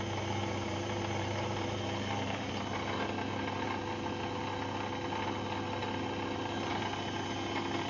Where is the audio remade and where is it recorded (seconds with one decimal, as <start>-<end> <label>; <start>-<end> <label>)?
0.0-0.4 recorded; 0.4-2.5 remade; 2.5-7.9 recorded